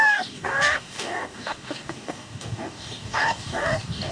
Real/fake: fake